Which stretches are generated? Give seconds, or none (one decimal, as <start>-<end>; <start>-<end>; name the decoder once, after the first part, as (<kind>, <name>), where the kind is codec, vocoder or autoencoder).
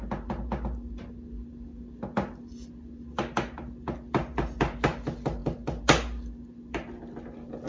none